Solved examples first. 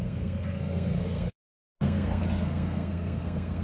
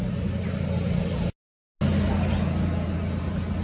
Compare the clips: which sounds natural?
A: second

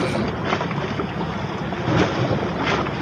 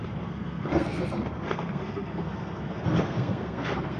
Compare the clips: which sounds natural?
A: first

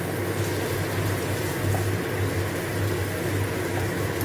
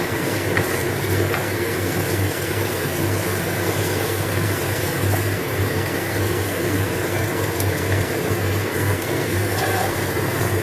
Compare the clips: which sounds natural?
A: first